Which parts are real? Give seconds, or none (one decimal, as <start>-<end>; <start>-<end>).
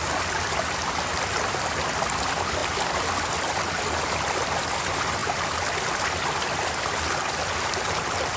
0.0-8.4